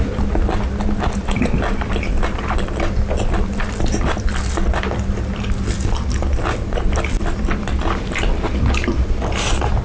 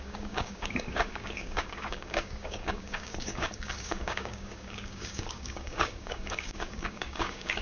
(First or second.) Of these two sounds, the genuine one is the first